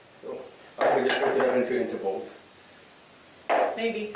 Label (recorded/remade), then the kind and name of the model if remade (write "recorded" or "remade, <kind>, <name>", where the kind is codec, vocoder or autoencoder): recorded